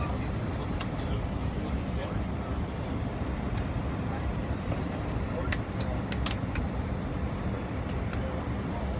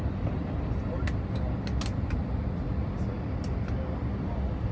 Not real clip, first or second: first